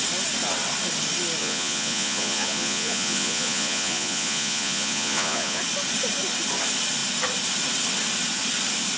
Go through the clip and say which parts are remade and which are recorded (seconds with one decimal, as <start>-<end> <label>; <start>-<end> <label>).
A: 0.0-1.4 recorded; 1.4-5.6 remade; 5.6-9.0 recorded